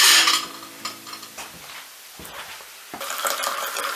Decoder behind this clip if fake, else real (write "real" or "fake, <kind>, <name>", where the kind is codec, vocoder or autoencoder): fake, vocoder, BigVGAN v2